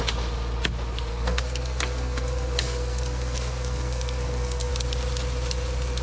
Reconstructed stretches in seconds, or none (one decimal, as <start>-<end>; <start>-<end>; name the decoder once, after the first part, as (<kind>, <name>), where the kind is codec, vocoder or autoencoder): 1.1-4.7 (codec, SNAC)

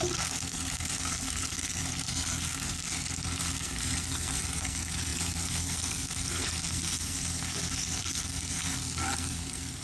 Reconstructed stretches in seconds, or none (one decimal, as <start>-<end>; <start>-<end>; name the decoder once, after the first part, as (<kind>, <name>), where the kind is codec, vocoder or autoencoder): 0.0-9.8 (codec, SNAC)

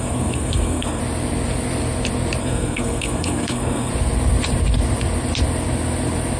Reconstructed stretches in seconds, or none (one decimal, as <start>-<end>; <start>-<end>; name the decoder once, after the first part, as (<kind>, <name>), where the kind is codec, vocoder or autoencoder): 0.0-1.0 (codec, SNAC); 2.4-3.9

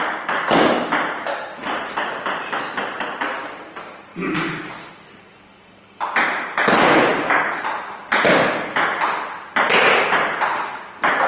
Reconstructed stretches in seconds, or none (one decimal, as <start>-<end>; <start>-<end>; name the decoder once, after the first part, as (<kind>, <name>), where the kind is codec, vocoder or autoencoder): none

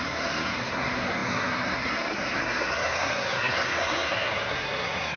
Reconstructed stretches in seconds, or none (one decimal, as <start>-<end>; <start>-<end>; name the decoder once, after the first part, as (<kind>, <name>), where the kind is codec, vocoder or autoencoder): 0.0-5.2 (codec, SNAC)

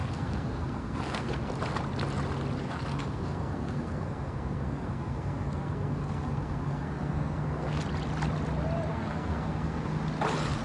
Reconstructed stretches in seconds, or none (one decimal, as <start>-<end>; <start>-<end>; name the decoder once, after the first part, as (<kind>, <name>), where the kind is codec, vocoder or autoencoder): 0.0-1.5 (codec, SNAC); 2.6-7.8; 8.9-10.0

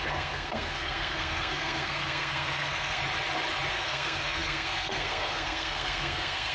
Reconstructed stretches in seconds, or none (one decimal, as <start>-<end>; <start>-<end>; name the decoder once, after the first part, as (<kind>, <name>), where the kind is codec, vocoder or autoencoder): 0.0-3.0 (codec, SNAC); 3.7-6.5

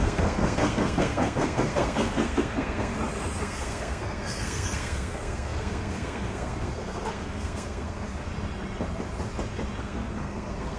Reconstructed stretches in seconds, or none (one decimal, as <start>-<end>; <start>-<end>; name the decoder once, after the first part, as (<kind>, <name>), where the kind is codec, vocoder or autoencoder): 0.0-2.9 (codec, SNAC); 3.4-8.3; 9.8-10.8